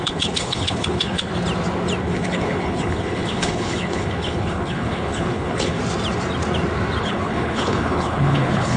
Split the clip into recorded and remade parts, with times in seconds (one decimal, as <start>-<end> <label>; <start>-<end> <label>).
0.0-1.3 remade; 1.3-2.0 recorded; 2.0-5.8 remade; 5.8-7.0 recorded; 7.0-8.8 remade